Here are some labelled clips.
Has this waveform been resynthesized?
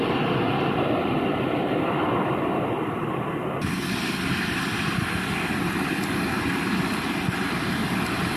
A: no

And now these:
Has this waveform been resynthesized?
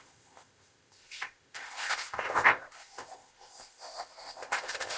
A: yes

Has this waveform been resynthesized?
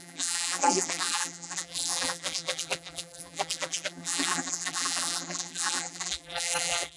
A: yes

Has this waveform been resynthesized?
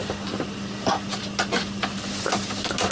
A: no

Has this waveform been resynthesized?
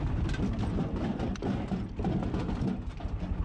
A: no